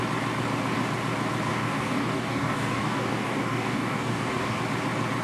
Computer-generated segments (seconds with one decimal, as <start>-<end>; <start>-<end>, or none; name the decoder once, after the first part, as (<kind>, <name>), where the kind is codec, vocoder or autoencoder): 1.5-4.6 (codec, DAC)